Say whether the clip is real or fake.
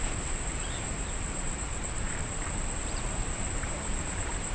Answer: fake